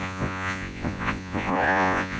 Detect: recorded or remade remade